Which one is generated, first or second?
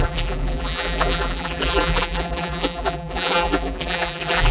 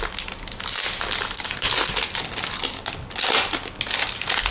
first